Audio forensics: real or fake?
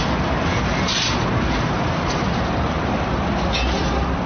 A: real